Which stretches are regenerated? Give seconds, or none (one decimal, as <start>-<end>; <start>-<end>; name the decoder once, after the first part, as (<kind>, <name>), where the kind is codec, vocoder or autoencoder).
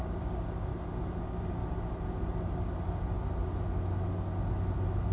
0.0-0.7 (codec, DAC); 1.2-1.6